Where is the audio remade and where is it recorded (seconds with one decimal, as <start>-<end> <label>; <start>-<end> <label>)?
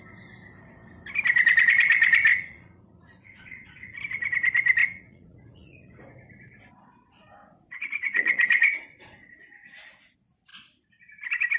0.0-2.3 recorded; 2.3-4.0 remade; 4.0-4.8 recorded; 4.8-5.9 remade; 5.9-7.2 recorded; 7.2-9.2 remade; 9.2-11.6 recorded